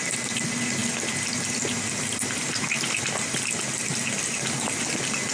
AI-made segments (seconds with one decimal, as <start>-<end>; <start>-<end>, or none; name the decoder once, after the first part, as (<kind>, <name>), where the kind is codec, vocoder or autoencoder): none